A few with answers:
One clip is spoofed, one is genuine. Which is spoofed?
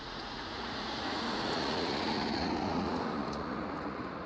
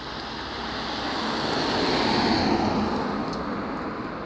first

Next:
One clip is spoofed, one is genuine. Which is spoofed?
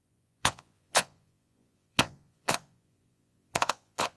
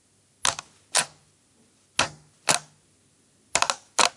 first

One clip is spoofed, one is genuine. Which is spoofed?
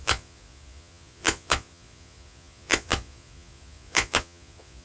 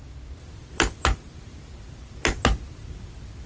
first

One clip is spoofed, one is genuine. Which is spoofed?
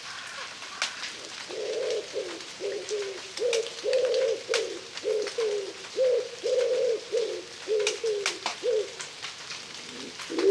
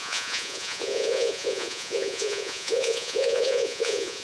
second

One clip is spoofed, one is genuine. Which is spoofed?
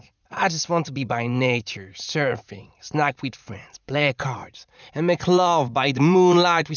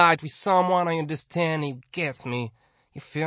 first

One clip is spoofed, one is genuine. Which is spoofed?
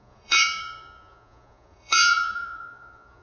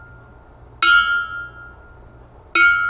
first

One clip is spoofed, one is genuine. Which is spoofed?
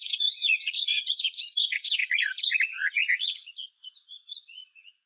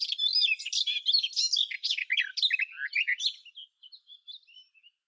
first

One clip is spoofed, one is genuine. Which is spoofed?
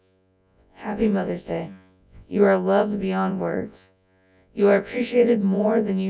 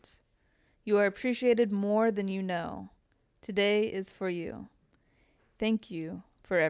first